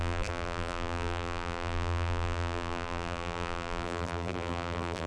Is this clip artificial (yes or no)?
yes